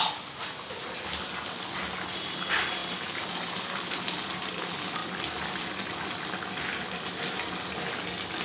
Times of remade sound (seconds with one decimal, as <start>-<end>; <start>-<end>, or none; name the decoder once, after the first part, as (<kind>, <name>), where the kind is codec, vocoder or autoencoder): none